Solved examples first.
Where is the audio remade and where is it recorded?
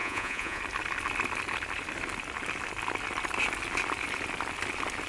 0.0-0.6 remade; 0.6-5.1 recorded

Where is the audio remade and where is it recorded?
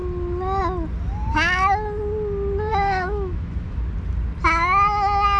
0.0-2.7 recorded; 2.7-3.8 remade; 3.8-5.4 recorded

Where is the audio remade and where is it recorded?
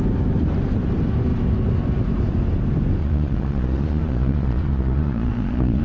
0.0-3.0 recorded; 3.0-5.8 remade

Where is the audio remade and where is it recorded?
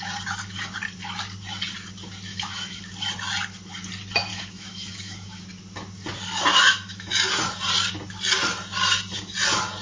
0.0-2.3 recorded; 2.3-2.8 remade; 2.8-4.3 recorded; 4.3-5.4 remade; 5.4-6.5 recorded; 6.5-7.1 remade; 7.1-9.8 recorded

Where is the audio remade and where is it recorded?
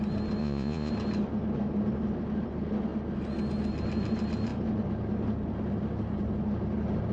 0.0-0.4 recorded; 0.4-0.9 remade; 0.9-7.1 recorded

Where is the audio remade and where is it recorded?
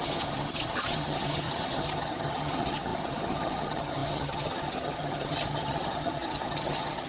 0.0-7.1 remade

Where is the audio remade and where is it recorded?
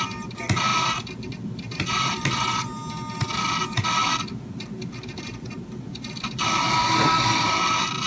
0.0-8.1 recorded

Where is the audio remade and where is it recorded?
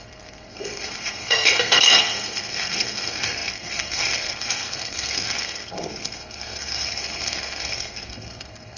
0.0-8.8 remade